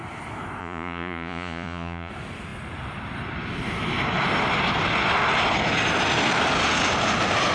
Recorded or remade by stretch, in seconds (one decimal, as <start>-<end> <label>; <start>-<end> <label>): 0.0-0.6 recorded; 0.6-2.1 remade; 2.1-7.5 recorded